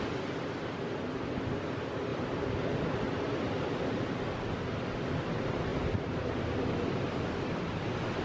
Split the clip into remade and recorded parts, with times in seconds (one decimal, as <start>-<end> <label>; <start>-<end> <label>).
0.0-2.1 recorded; 2.1-2.8 remade; 2.8-5.7 recorded; 5.7-6.4 remade; 6.4-8.2 recorded